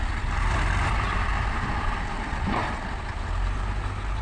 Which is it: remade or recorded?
recorded